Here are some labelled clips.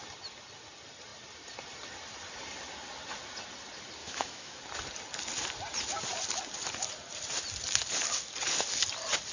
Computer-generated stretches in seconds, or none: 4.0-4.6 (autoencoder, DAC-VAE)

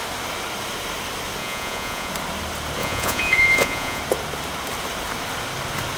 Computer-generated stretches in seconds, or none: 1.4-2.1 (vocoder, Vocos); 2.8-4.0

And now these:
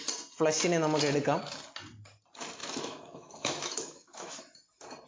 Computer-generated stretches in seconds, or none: 2.6-4.4 (autoencoder, DAC-VAE)

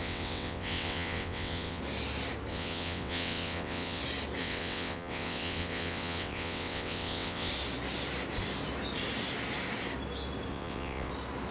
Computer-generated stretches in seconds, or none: 0.0-1.8 (vocoder, WaveNeXt); 2.5-4.0; 4.4-7.5; 10.5-11.1

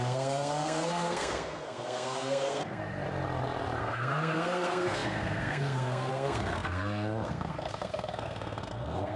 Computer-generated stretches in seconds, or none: 0.0-2.8 (codec, SNAC); 3.8-9.2

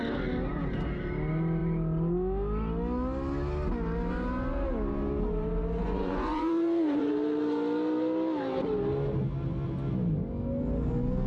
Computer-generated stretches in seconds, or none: 5.8-7.1 (vocoder, Vocos)

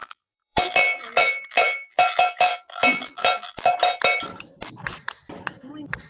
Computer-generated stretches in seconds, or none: 0.0-3.7 (vocoder, BigVGAN v2)

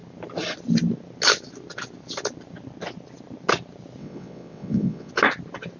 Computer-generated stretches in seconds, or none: 4.0-5.1 (vocoder, WaveNeXt)